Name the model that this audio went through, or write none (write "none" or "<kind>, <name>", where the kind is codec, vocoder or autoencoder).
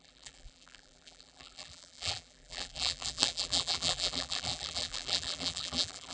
vocoder, BigVGAN v2